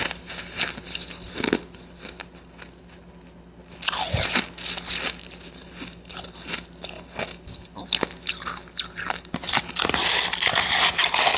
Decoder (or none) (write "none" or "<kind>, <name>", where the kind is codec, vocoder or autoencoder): none